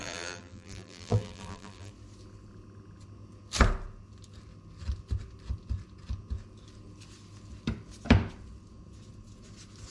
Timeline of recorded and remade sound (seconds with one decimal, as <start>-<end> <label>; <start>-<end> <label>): 0.0-1.9 remade; 1.9-9.9 recorded